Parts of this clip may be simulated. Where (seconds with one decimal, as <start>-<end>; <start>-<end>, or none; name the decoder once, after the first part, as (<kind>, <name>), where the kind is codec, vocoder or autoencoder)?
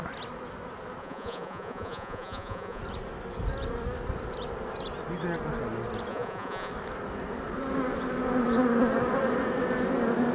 1.0-2.8 (vocoder, Vocos); 6.1-6.7